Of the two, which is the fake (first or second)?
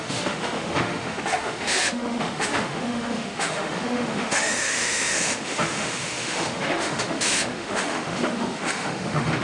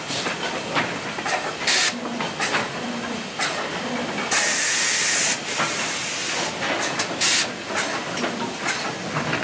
first